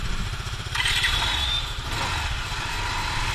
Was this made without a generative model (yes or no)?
yes